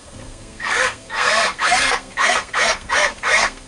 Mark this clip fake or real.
fake